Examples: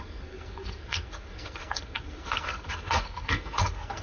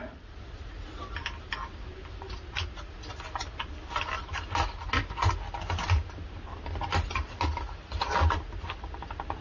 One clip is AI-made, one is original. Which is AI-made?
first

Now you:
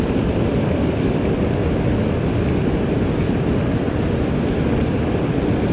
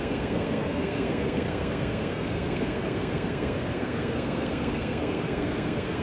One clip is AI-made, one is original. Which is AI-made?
second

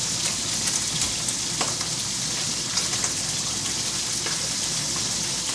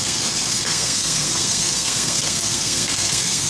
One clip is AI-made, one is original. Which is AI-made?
second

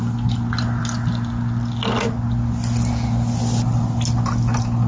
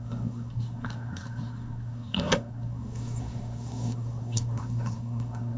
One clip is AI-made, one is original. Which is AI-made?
second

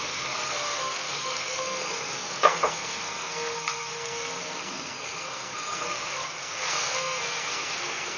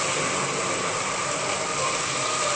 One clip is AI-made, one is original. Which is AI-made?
first